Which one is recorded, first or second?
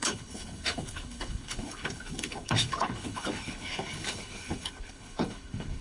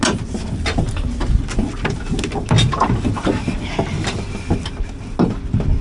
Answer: second